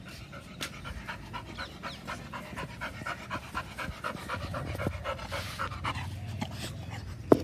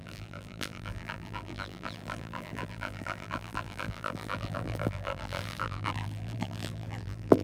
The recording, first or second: first